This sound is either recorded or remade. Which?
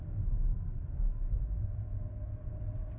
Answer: recorded